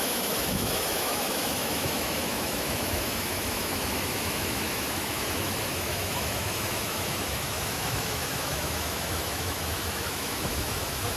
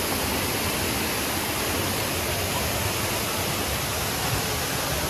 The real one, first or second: second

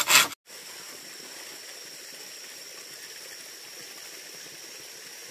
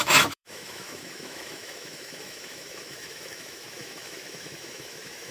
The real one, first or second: first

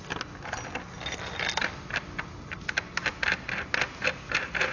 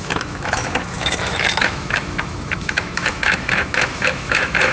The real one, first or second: first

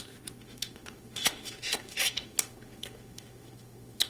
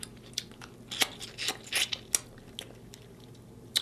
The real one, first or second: second